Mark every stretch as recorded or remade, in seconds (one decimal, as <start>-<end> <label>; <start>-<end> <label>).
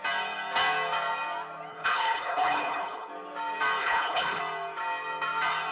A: 0.0-1.7 recorded; 1.7-3.1 remade; 3.1-3.8 recorded; 3.8-4.4 remade; 4.4-5.7 recorded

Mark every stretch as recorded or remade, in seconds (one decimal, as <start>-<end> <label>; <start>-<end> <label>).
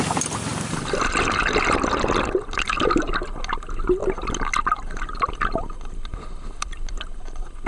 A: 0.0-7.7 recorded